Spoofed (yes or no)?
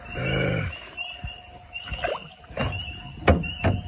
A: no